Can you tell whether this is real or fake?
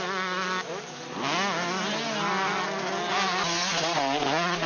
real